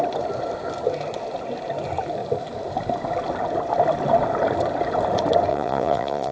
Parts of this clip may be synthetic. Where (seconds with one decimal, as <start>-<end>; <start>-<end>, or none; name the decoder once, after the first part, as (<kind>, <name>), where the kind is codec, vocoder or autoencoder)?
5.5-6.3 (vocoder, Vocos)